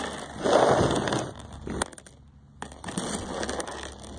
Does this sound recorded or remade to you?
recorded